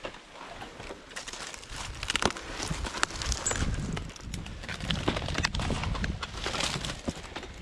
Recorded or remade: recorded